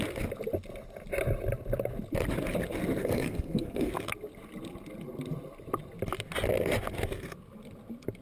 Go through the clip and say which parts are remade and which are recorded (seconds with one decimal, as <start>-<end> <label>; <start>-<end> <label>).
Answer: 0.0-3.0 recorded; 3.0-3.9 remade; 3.9-8.2 recorded